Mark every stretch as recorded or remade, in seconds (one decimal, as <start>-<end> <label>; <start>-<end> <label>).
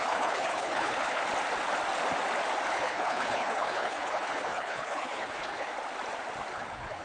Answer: 0.0-1.2 remade; 1.2-2.7 recorded; 2.7-5.7 remade; 5.7-6.5 recorded; 6.5-7.0 remade